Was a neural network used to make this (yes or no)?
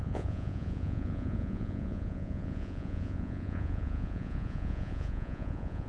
yes